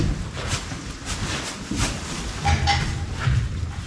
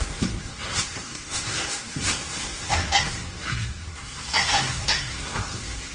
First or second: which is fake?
second